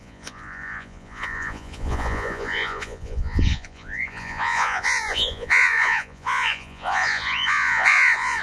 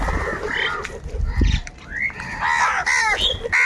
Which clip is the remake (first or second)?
first